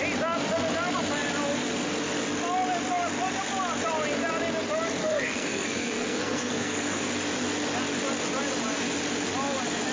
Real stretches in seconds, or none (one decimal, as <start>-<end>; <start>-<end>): 0.0-5.0; 7.1-9.9